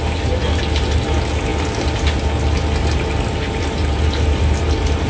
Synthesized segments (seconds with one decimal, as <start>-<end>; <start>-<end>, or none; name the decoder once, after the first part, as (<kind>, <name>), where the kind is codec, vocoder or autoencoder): none